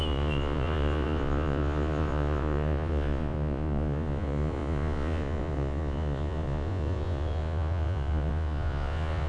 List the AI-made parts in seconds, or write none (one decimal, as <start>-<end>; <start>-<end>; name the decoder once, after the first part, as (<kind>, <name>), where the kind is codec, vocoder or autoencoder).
0.0-9.3 (vocoder, Vocos)